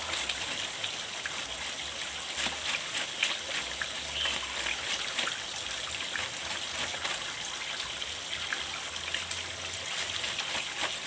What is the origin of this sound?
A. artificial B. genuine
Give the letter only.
B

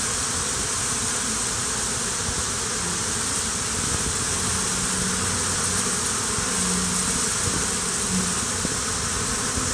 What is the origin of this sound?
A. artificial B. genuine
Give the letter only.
B